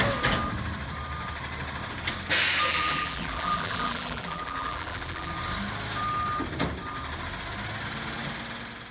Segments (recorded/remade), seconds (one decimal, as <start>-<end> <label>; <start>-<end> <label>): 0.0-2.7 recorded; 2.7-5.3 remade; 5.3-8.9 recorded